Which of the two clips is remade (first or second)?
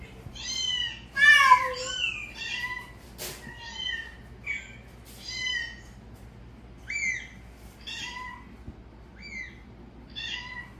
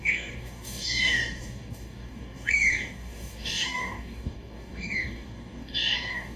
second